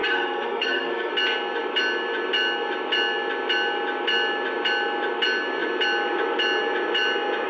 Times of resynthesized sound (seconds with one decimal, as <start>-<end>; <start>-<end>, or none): 0.0-1.1